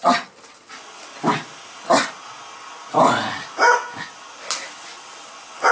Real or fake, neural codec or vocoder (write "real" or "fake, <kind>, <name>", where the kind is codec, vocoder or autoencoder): real